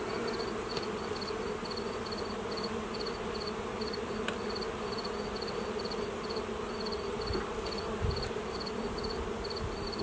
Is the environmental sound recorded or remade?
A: recorded